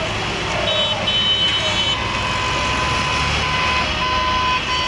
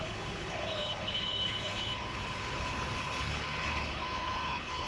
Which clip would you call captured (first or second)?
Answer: first